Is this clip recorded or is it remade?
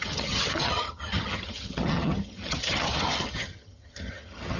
remade